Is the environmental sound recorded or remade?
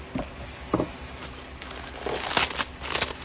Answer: recorded